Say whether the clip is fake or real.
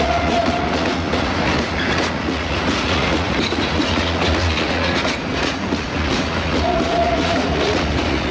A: fake